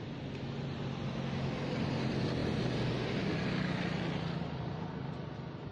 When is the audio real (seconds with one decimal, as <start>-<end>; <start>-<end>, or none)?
0.0-5.7